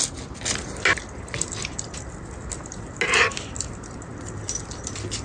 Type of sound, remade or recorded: recorded